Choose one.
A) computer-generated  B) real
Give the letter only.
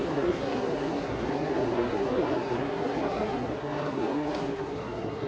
A